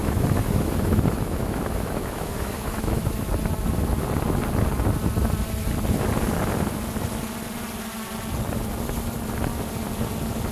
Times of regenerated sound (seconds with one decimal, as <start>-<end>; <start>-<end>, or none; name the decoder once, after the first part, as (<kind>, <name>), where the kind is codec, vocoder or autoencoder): 0.0-3.3 (autoencoder, DAC-VAE)